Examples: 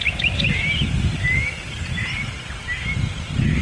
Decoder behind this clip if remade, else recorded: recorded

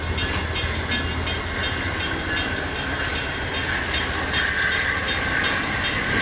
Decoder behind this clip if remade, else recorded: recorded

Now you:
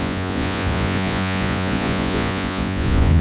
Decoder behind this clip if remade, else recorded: remade, vocoder, Vocos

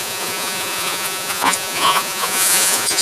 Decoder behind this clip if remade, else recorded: remade, vocoder, Vocos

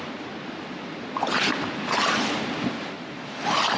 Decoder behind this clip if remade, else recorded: recorded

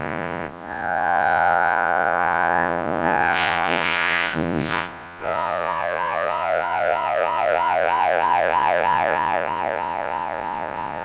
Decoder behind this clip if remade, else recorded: remade, vocoder, Vocos